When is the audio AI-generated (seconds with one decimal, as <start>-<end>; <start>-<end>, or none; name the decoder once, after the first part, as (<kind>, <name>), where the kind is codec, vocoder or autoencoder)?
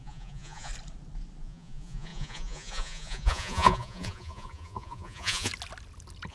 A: 0.0-0.7 (vocoder, Vocos); 1.4-5.5